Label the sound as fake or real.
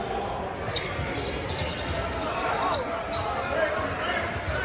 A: real